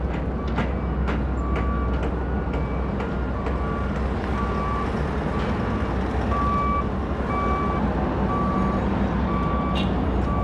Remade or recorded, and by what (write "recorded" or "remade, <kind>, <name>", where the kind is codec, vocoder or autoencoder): recorded